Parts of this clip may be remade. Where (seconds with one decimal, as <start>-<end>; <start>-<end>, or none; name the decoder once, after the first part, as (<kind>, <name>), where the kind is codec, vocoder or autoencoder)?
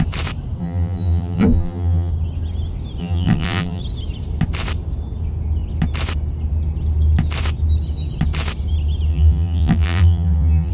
0.6-2.1 (vocoder, BigVGAN v2); 3.0-3.8; 9.1-10.7